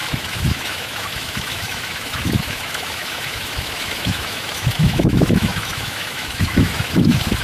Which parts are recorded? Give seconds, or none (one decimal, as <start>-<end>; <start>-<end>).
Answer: none